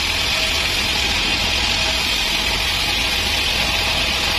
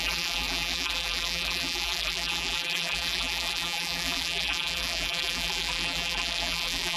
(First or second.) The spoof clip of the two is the second